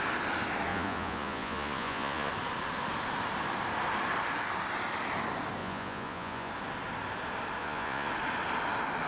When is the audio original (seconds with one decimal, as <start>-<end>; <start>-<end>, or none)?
0.0-0.7; 2.3-5.6; 6.5-7.6; 8.1-9.1